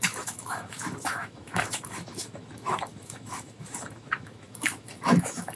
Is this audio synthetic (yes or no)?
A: yes